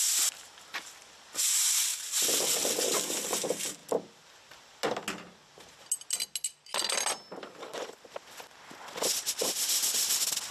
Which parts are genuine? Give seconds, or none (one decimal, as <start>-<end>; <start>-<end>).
0.0-1.9; 3.0-10.5